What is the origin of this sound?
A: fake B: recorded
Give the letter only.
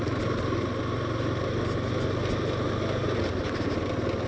B